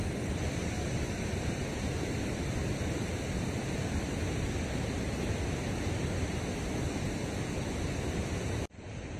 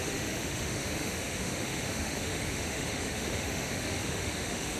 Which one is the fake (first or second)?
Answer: second